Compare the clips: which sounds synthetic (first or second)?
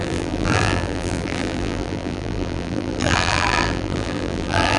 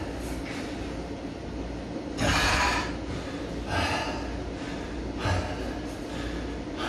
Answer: first